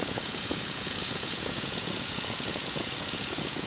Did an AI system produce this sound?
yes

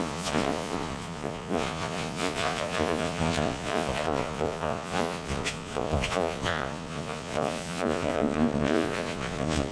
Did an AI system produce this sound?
yes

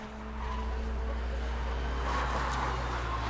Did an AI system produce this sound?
no